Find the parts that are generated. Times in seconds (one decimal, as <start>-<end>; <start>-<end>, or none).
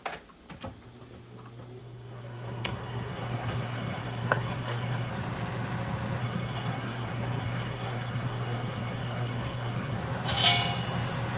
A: 1.8-5.1; 6.2-10.0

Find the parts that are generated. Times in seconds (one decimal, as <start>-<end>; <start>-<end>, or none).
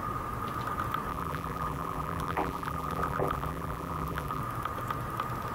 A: 1.1-4.4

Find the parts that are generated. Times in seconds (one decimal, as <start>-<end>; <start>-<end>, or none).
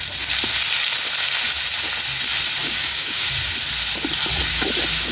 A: 2.6-3.3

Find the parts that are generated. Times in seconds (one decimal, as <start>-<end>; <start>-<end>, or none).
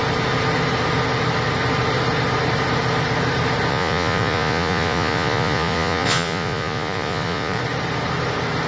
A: 3.7-7.6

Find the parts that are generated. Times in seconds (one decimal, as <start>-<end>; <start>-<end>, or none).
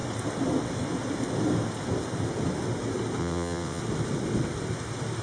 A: 3.2-3.8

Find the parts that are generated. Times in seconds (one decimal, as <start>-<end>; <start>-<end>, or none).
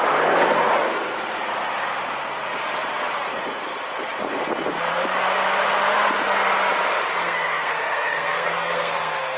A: 7.2-9.4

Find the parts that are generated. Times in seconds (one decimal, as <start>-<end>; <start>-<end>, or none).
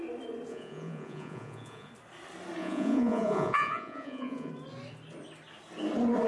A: 0.5-1.9; 2.6-4.5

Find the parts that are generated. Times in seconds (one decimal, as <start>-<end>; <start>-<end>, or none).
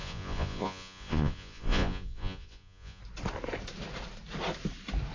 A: 0.0-3.0